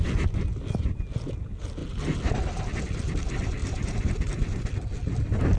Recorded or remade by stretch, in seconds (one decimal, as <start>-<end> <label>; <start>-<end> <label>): 0.0-5.6 recorded